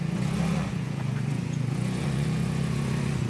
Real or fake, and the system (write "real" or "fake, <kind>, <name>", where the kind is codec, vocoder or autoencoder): fake, vocoder, Vocos